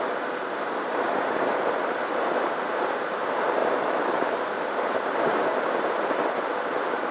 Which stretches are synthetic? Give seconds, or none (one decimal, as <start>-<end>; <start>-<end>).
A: 0.0-5.5